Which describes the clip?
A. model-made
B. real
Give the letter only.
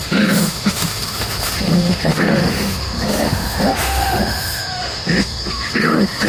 A